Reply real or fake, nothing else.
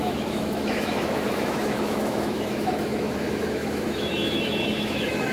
fake